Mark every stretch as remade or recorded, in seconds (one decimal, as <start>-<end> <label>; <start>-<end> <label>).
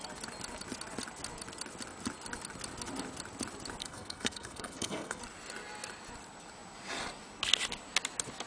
0.0-3.8 recorded; 3.8-5.2 remade; 5.2-8.5 recorded